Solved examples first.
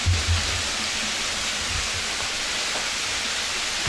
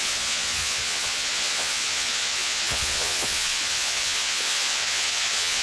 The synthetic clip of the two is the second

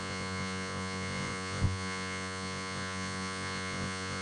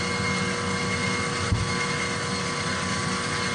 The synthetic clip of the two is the first